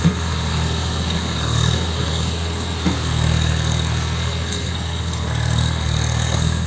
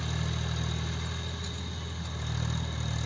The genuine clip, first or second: second